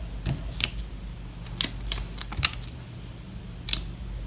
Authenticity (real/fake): real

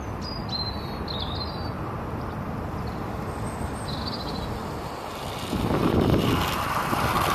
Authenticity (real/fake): real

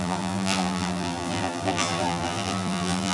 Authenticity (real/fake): fake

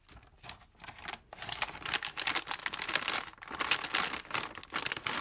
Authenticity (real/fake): real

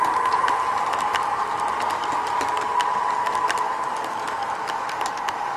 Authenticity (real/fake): real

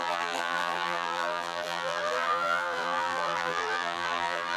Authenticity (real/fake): fake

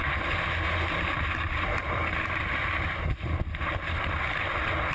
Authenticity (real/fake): real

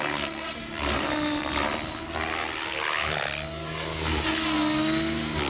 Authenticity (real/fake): real